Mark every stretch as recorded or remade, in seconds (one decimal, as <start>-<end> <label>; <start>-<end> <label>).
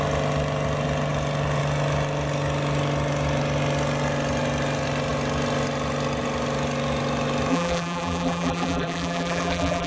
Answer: 0.0-7.5 recorded; 7.5-9.9 remade